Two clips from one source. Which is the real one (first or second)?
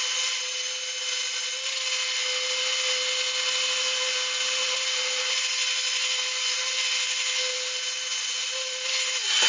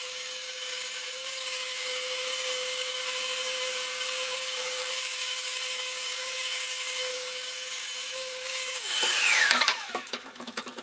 first